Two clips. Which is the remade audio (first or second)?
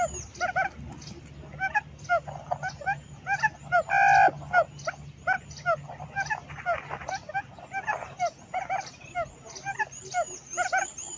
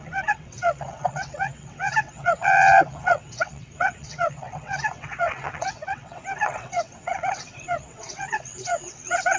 second